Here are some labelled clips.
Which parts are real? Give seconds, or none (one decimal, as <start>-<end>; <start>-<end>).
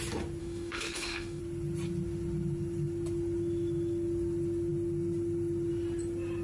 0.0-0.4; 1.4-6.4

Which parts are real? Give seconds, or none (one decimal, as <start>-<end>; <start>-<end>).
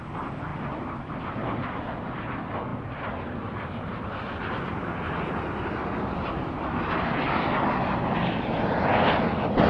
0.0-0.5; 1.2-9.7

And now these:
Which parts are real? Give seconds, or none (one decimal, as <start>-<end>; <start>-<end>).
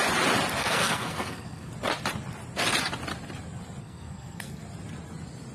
0.0-0.6; 1.7-3.8; 4.6-5.5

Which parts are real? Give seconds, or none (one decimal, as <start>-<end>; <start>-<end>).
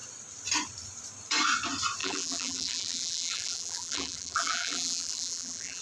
0.0-2.0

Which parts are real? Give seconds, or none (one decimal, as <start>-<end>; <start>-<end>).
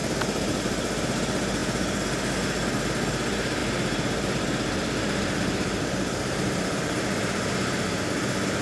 0.6-3.6; 7.0-8.6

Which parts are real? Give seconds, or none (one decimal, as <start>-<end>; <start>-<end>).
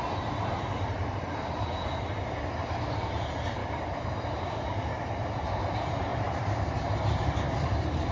none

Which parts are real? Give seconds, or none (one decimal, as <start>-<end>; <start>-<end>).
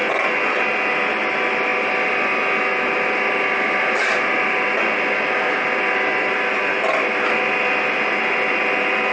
0.0-9.1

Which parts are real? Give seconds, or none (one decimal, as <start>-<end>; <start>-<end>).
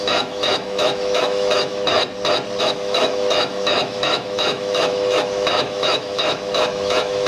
2.0-2.6